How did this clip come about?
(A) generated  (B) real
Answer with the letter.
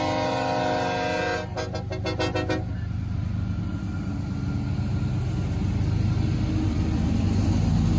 B